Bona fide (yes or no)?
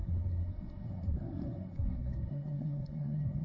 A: no